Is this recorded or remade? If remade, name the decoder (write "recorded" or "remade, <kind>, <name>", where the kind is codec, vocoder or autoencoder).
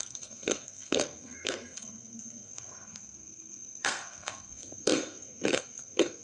remade, codec, SNAC